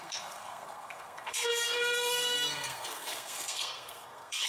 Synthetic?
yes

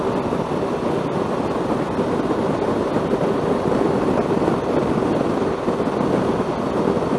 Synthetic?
no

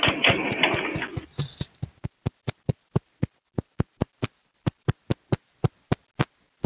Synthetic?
no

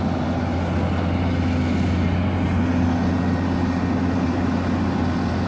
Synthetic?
no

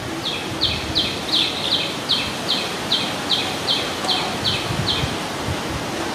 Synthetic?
no